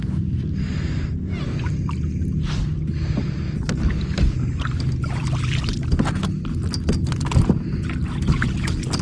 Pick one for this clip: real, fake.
real